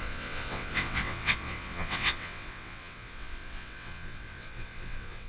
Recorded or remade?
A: remade